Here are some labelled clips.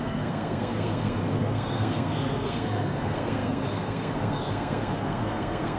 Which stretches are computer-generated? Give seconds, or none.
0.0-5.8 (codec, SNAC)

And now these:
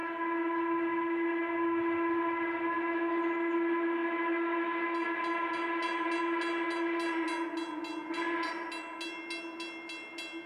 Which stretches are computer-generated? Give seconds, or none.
none

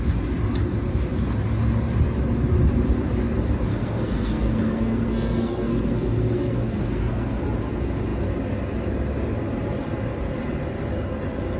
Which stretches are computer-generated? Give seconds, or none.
3.7-7.4 (codec, SNAC)